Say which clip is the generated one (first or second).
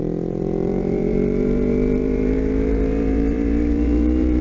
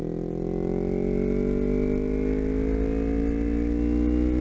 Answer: first